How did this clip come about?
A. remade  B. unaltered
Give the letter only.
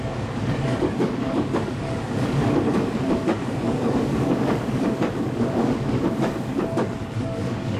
A